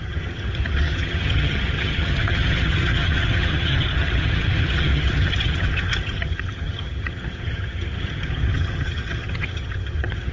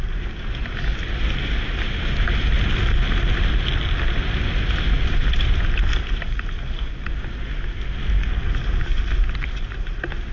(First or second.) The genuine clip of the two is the second